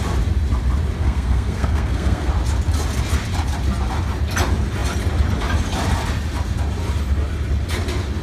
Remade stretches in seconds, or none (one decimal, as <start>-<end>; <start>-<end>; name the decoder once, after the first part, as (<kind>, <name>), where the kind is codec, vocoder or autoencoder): 1.0-2.3 (codec, SNAC)